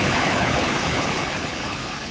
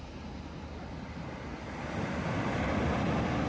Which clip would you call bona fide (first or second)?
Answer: second